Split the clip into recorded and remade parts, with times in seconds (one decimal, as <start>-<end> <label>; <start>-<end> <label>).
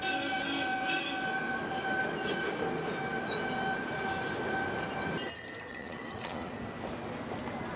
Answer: 0.0-5.7 recorded; 5.7-6.5 remade; 6.5-7.8 recorded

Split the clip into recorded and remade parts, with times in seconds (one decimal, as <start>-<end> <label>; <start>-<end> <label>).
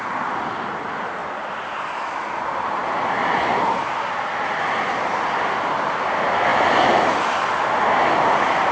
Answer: 0.0-8.7 recorded